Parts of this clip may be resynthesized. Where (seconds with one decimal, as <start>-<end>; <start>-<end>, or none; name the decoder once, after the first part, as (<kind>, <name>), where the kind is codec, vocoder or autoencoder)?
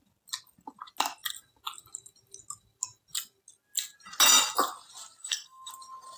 5.2-5.7 (codec, SNAC)